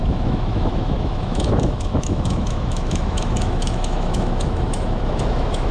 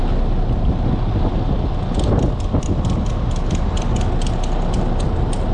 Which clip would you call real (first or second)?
second